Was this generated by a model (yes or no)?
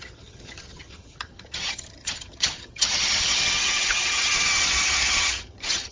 yes